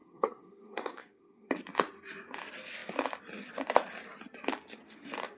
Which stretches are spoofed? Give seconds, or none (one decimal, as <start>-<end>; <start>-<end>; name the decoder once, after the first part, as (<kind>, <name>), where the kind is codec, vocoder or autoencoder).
0.0-1.5 (codec, SNAC)